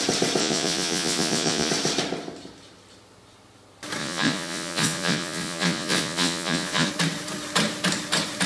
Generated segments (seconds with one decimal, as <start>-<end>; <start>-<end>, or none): 0.4-1.7; 4.0-6.9